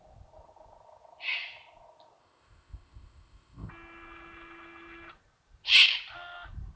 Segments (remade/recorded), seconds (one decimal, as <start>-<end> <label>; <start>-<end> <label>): 0.0-2.2 recorded; 2.2-3.7 remade; 3.7-6.8 recorded